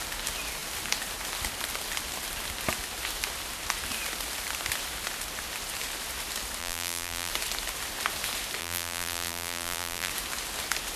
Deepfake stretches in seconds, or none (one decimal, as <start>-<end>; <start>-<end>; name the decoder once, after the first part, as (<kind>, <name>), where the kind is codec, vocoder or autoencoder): 6.6-7.3 (vocoder, BigVGAN v2); 8.6-10.1